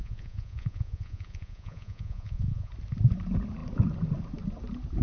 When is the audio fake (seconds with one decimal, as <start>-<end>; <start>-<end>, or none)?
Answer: 0.0-2.7

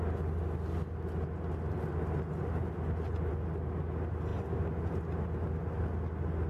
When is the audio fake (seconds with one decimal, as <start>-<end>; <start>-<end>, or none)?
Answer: none

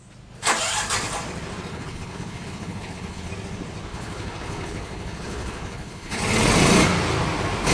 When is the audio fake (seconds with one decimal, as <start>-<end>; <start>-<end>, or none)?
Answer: 1.7-3.3; 3.9-6.2

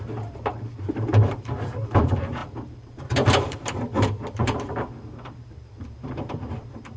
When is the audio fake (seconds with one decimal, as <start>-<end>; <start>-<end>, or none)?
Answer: 0.0-7.0

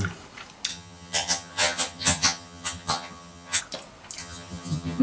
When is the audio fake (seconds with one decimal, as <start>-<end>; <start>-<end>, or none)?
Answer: 0.7-3.6; 4.2-5.0